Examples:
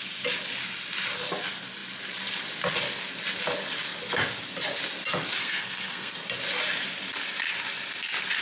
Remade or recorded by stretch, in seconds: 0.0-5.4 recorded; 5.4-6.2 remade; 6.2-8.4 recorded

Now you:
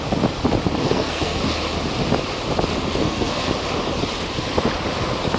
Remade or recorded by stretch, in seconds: 0.0-0.8 recorded; 0.8-1.4 remade; 1.4-2.9 recorded; 2.9-3.5 remade; 3.5-5.4 recorded

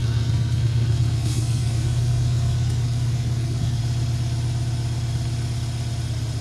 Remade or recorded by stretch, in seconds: 0.0-3.8 remade; 3.8-6.4 recorded

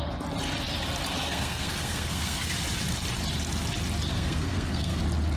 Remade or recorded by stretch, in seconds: 0.0-1.2 recorded; 1.2-2.5 remade; 2.5-4.1 recorded; 4.1-5.0 remade; 5.0-5.4 recorded

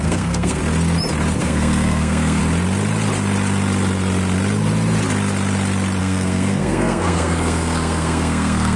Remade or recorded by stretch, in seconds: 0.0-0.6 remade; 0.6-1.4 recorded; 1.4-2.4 remade; 2.4-6.0 recorded; 6.0-8.8 remade

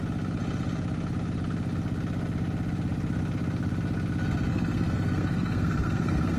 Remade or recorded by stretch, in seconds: 0.0-4.5 recorded; 4.5-6.4 remade